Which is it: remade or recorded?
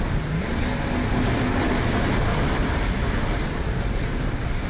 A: recorded